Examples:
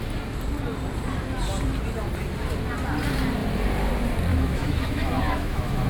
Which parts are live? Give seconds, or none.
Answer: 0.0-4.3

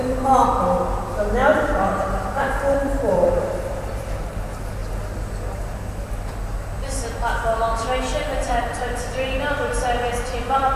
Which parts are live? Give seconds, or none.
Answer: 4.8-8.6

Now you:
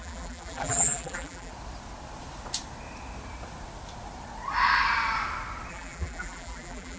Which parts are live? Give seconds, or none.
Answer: 1.5-5.7

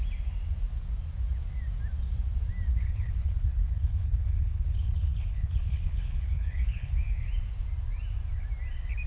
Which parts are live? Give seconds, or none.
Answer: 0.0-2.7; 6.9-9.1

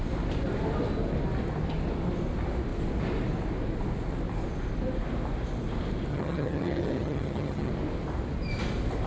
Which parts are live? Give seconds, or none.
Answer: 0.0-6.1; 7.7-9.1